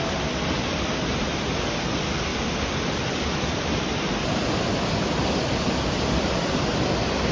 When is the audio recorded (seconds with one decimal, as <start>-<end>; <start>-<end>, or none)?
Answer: 0.0-0.7; 1.2-2.3; 6.4-7.3